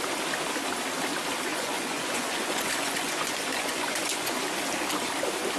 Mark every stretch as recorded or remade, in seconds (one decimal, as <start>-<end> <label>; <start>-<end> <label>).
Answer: 0.0-1.5 recorded; 1.5-4.4 remade; 4.4-5.6 recorded